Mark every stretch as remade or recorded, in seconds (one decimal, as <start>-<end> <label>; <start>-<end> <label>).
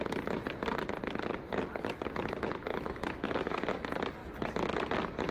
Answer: 0.0-2.7 recorded; 2.7-3.7 remade; 3.7-5.3 recorded